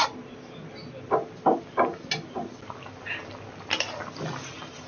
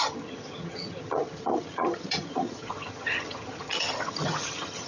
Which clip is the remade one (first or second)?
second